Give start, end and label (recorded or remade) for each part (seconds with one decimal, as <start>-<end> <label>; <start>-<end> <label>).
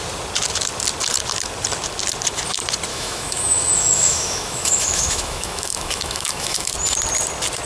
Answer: 0.0-2.9 recorded; 2.9-6.7 remade; 6.7-7.7 recorded